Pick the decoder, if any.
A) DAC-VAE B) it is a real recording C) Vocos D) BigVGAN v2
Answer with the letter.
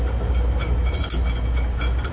B